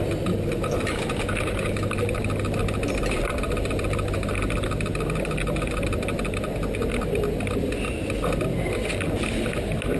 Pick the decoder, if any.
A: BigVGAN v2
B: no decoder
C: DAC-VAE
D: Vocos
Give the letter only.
B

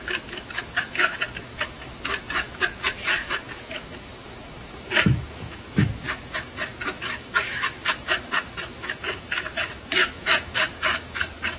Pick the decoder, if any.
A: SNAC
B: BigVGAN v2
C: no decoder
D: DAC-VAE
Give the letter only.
D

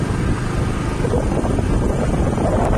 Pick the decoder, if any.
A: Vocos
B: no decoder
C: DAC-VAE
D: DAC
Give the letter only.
B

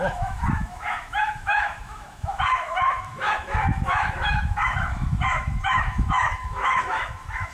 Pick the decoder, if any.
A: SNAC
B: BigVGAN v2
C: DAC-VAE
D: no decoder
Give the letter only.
C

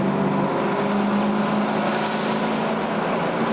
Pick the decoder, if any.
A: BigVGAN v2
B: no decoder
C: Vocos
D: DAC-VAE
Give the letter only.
B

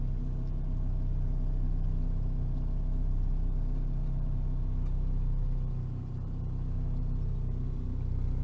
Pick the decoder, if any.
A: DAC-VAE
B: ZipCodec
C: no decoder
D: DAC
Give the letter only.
C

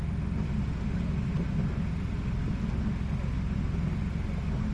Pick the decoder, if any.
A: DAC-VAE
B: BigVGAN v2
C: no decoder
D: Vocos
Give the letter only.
C